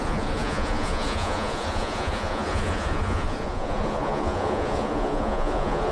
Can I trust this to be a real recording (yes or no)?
no